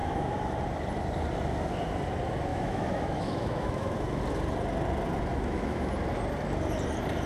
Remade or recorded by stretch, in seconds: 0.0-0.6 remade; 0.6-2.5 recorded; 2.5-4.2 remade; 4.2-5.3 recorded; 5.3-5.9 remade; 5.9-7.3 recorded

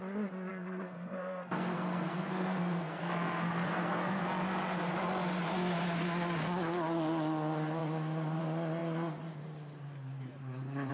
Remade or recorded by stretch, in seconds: 0.0-0.5 recorded; 0.5-4.2 remade; 4.2-10.9 recorded

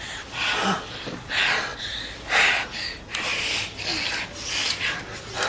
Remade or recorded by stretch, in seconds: 0.0-5.5 recorded

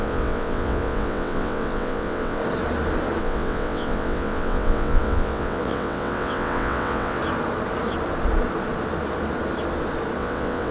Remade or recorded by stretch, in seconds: 0.0-2.4 remade; 2.4-3.2 recorded; 3.2-7.2 remade; 7.2-10.2 recorded; 10.2-10.7 remade